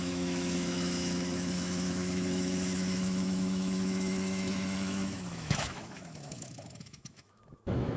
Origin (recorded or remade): remade